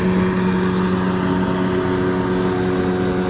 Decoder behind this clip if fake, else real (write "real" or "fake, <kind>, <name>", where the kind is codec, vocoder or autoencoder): real